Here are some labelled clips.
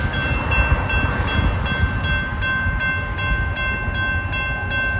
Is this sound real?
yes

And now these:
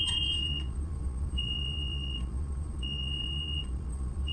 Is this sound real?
no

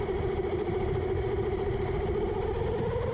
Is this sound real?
yes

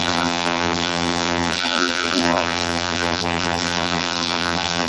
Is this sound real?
no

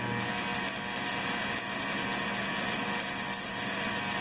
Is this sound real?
yes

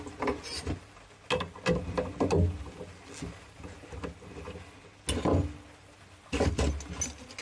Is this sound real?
yes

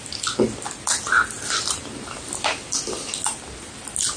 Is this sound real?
yes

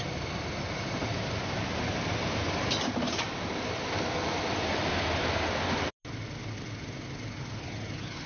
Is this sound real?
yes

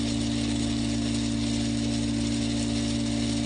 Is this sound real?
yes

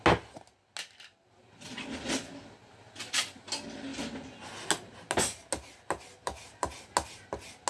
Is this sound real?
yes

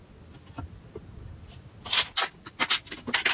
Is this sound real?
yes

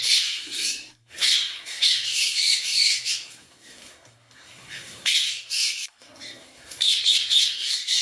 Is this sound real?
no